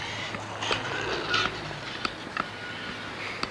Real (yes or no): yes